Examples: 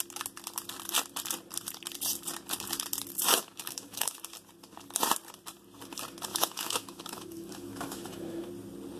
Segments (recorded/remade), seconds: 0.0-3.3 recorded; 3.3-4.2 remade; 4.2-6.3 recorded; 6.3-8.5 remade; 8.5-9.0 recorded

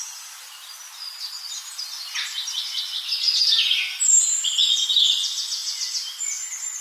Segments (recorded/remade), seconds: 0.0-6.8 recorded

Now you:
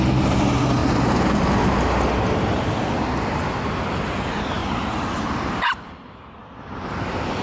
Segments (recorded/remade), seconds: 0.0-4.6 recorded; 4.6-5.5 remade; 5.5-7.4 recorded

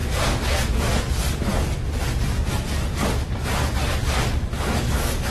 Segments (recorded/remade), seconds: 0.0-4.0 recorded; 4.0-5.3 remade

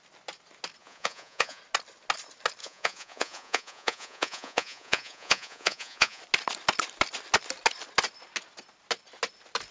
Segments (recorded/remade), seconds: 0.0-0.8 recorded; 0.8-1.6 remade; 1.6-2.6 recorded; 2.6-6.2 remade; 6.2-9.7 recorded